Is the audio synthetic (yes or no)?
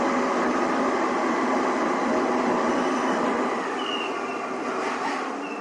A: no